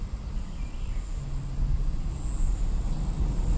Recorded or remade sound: recorded